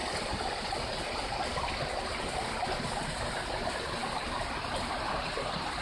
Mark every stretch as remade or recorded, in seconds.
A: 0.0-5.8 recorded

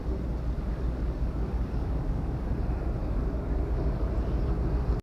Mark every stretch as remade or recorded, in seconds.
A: 0.0-0.7 recorded; 0.7-2.5 remade; 2.5-3.0 recorded; 3.0-4.1 remade; 4.1-5.0 recorded

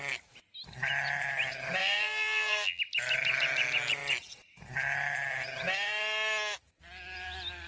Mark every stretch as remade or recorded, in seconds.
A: 0.0-1.8 recorded; 1.8-2.8 remade; 2.8-7.7 recorded

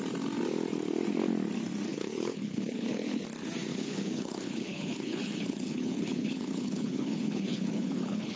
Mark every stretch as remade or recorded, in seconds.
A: 0.0-1.9 recorded; 1.9-3.2 remade; 3.2-3.7 recorded; 3.7-8.4 remade

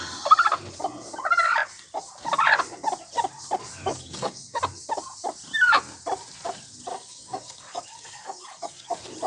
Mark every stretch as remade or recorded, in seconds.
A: 0.0-3.8 recorded; 3.8-4.6 remade; 4.6-6.9 recorded; 6.9-8.9 remade; 8.9-9.3 recorded

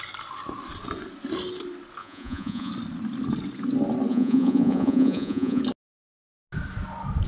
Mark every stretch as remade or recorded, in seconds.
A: 0.0-2.0 recorded; 2.0-2.7 remade; 2.7-4.1 recorded; 4.1-5.6 remade; 5.6-7.3 recorded

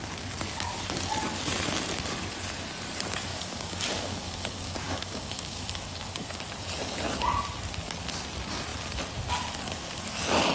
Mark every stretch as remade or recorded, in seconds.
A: 0.0-3.3 recorded; 3.3-6.4 remade; 6.4-10.5 recorded

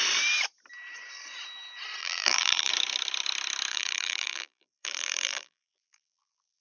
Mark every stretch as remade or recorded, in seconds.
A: 0.0-2.0 recorded; 2.0-2.7 remade; 2.7-3.7 recorded; 3.7-6.6 remade